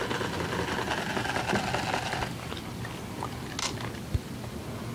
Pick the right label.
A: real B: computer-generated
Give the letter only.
A